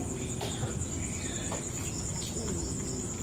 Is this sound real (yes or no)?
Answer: yes